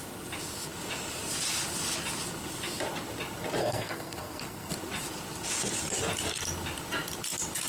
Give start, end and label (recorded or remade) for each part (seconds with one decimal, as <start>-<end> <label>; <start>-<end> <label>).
0.0-3.6 recorded; 3.6-4.7 remade; 4.7-7.7 recorded